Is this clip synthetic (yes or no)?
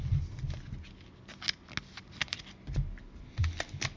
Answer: no